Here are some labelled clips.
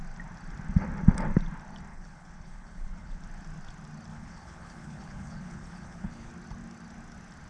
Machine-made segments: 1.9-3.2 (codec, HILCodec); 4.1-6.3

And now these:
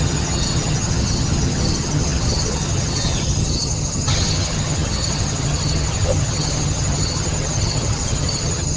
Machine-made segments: 0.0-8.8 (vocoder, HiFi-GAN)

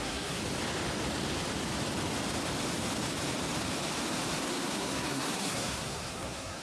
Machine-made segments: 0.0-0.4 (codec, SNAC); 4.4-6.6

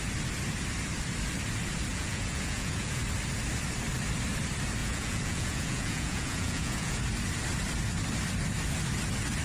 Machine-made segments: 1.9-3.0 (vocoder, Vocos); 4.8-7.0

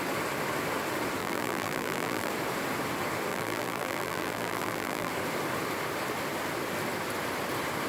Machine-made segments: 1.2-2.3 (vocoder, BigVGAN v2); 3.3-5.1

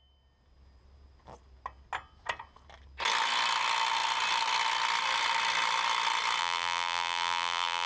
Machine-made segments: 6.4-7.9 (vocoder, BigVGAN v2)